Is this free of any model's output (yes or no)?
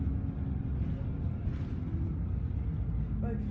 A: yes